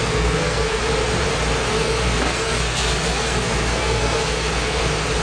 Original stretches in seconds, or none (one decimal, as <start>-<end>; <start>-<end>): 0.8-1.7; 4.8-5.2